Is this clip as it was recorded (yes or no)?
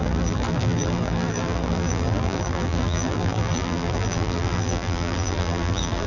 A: no